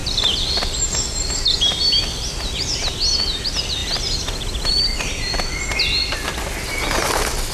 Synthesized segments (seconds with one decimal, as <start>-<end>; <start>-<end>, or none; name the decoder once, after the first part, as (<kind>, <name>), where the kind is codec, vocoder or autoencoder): none